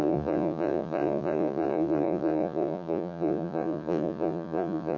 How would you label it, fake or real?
fake